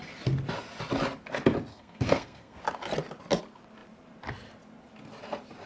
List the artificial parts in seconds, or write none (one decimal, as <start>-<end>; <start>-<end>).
1.7-2.6

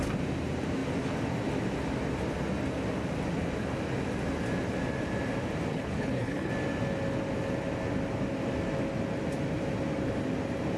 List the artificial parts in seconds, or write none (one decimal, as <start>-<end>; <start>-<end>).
5.7-6.5

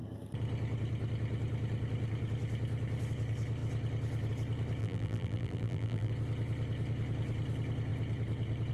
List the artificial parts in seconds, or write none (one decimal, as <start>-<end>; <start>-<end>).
4.8-6.1

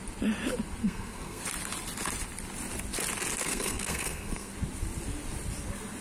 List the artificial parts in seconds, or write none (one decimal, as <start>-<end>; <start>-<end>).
0.8-1.4; 3.4-4.5

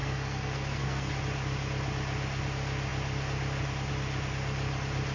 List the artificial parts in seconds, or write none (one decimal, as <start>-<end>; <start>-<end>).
0.0-1.1

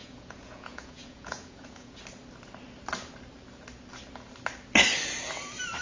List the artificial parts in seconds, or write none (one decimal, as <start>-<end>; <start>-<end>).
0.0-2.0

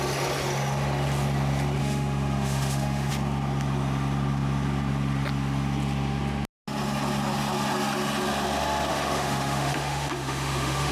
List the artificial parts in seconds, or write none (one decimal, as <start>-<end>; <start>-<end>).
1.8-3.1; 8.9-10.9

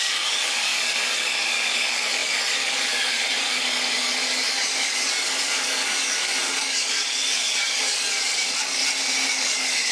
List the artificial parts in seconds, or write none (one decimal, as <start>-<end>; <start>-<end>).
0.0-8.8; 9.3-9.9